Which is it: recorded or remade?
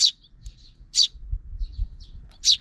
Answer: recorded